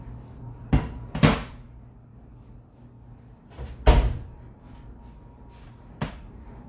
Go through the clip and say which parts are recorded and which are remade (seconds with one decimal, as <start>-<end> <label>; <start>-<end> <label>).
0.0-6.7 recorded